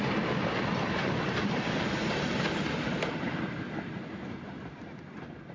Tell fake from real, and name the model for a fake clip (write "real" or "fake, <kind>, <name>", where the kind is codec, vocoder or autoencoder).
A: real